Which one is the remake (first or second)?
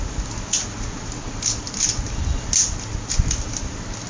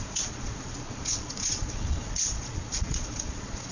second